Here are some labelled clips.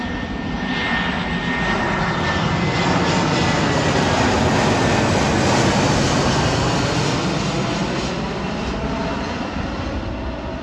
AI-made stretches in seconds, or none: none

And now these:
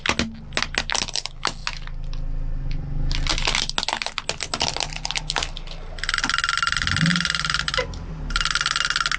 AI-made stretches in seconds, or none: 7.1-8.1 (vocoder, BigVGAN v2)

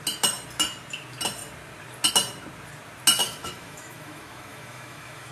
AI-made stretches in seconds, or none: 3.2-5.3 (autoencoder, DAC-VAE)

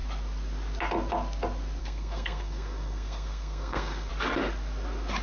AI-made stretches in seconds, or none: 1.8-4.1 (codec, SNAC)

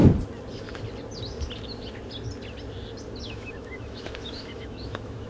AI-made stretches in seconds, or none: 3.2-5.3 (autoencoder, DAC-VAE)

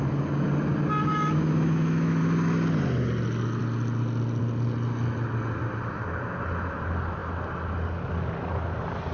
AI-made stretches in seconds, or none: 1.1-2.2 (autoencoder, DAC-VAE)

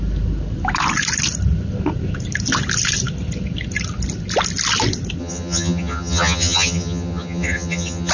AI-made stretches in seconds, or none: 5.2-8.1 (vocoder, HiFi-GAN)

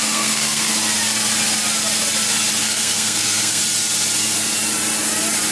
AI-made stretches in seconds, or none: 0.0-0.7 (codec, SNAC); 2.6-3.6